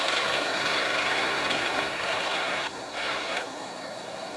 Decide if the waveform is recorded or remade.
remade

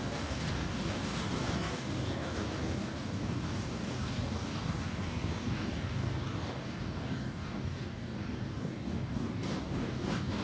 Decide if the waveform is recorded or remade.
remade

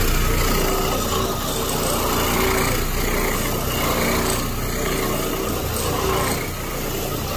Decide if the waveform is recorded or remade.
recorded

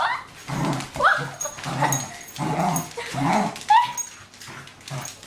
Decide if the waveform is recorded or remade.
recorded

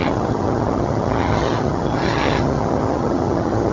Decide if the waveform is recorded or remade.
remade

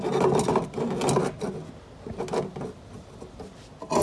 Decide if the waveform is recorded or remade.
recorded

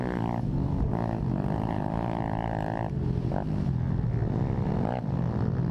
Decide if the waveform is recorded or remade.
recorded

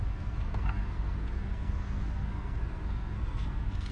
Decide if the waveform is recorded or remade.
remade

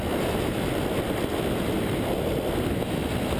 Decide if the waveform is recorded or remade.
recorded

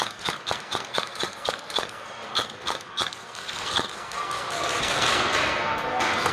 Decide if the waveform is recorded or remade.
remade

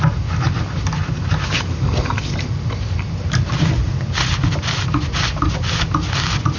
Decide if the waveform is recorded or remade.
recorded